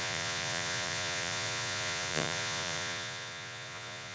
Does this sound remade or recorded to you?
remade